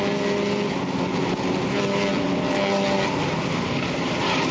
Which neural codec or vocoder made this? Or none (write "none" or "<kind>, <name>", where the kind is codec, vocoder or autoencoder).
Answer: none